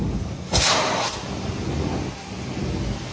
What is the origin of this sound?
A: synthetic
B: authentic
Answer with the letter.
B